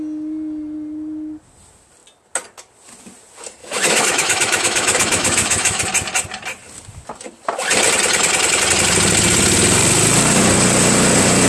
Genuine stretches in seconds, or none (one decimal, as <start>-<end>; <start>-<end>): 0.0-3.6; 5.8-11.5